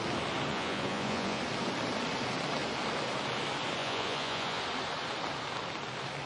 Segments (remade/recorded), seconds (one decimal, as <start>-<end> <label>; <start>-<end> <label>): 0.0-0.5 recorded; 0.5-1.4 remade; 1.4-3.8 recorded; 3.8-4.6 remade; 4.6-6.3 recorded